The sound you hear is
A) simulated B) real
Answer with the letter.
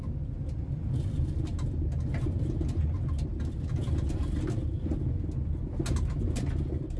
B